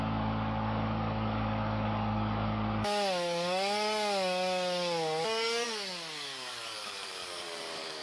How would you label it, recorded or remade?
remade